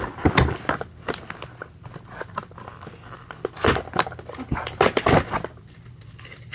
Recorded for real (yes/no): yes